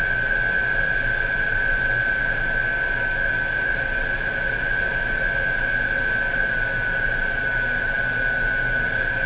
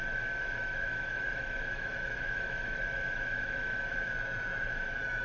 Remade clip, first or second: second